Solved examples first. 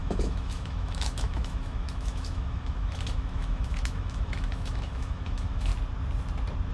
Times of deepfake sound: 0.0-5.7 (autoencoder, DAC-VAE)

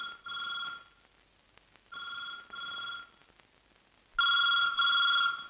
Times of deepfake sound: none

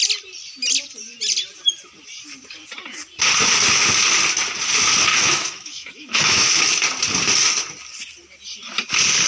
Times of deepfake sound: 5.1-6.5 (autoencoder, DAC-VAE)

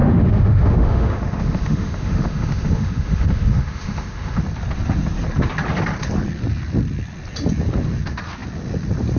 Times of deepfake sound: 0.0-4.4 (autoencoder, DAC-VAE)